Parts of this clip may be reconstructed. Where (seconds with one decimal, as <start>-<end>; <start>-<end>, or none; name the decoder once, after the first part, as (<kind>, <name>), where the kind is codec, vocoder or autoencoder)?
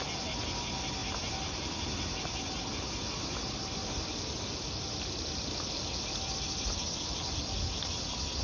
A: none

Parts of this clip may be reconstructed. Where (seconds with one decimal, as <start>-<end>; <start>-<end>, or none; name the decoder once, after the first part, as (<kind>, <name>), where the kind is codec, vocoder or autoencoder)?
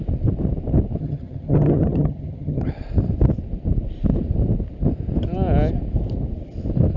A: 1.0-2.7 (vocoder, HiFi-GAN)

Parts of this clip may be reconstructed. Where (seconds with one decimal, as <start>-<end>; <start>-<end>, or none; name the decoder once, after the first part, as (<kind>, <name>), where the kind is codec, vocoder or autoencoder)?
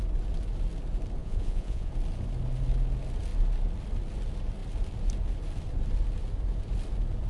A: 1.2-1.9 (vocoder, Vocos)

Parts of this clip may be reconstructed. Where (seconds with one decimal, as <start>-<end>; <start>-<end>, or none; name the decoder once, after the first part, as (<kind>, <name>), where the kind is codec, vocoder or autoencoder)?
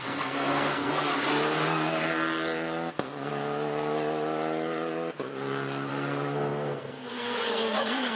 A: 0.0-1.1 (codec, SNAC); 2.9-3.3; 5.9-8.2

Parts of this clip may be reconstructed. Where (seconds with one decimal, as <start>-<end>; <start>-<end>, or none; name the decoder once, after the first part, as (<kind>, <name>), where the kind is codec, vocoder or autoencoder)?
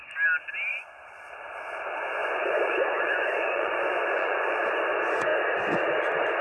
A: 0.7-1.3 (vocoder, Vocos); 2.2-4.6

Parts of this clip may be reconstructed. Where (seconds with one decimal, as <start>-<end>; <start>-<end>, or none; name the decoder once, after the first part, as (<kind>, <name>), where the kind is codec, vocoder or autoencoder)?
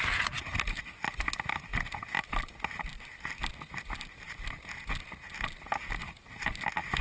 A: none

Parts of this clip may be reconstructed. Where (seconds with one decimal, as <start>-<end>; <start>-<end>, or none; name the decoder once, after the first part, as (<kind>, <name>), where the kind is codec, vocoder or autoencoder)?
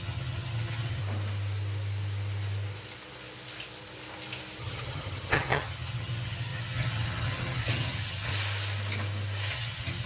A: 0.0-1.0 (vocoder, HiFi-GAN); 4.6-8.3; 9.5-10.1